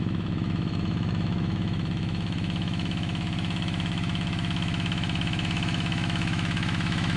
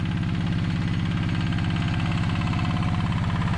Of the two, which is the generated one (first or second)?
first